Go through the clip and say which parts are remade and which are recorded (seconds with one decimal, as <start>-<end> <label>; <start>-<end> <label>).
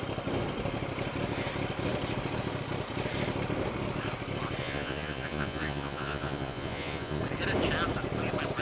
0.0-4.6 recorded; 4.6-7.2 remade; 7.2-8.6 recorded